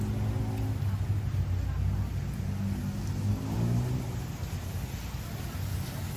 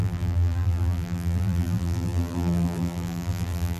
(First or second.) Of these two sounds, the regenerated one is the second